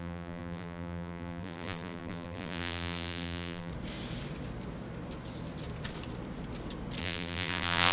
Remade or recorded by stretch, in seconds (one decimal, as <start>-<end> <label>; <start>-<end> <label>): 0.0-3.7 remade; 3.7-7.0 recorded; 7.0-7.9 remade